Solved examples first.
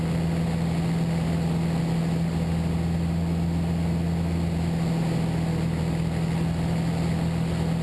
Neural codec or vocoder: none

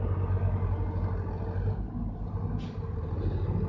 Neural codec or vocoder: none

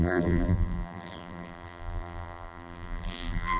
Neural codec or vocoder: vocoder, BigVGAN v2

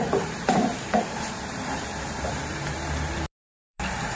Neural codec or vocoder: vocoder, BigVGAN v2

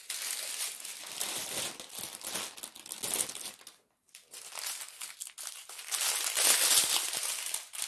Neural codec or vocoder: none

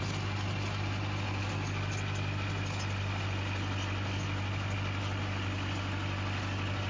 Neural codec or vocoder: none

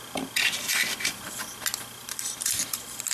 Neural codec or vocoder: none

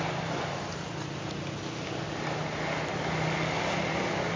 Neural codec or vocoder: none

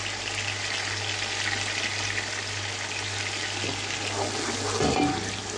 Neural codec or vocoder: none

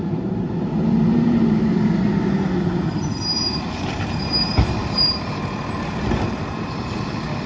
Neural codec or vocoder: vocoder, BigVGAN v2